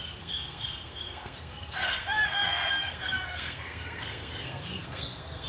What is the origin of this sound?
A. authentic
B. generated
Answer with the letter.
B